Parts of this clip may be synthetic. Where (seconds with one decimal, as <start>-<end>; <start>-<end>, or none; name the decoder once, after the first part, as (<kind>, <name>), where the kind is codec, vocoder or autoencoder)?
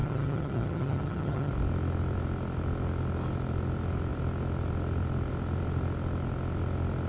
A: 0.0-1.5 (vocoder, HiFi-GAN)